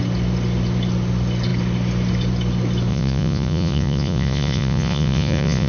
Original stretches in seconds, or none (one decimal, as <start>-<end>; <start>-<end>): 0.0-2.9